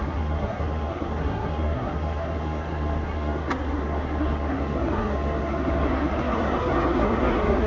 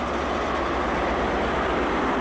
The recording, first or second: second